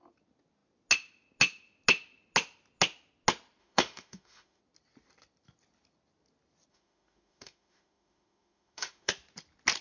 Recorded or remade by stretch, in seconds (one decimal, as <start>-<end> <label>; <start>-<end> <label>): 0.0-3.6 recorded; 3.6-4.6 remade; 4.6-6.7 recorded; 6.7-9.1 remade; 9.1-9.8 recorded